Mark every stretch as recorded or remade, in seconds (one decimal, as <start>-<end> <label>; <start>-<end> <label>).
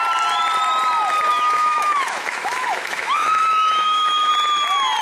0.0-1.3 recorded; 1.3-4.3 remade; 4.3-5.0 recorded